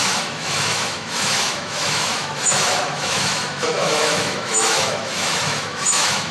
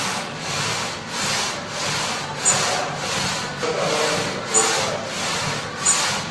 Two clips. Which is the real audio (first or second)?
second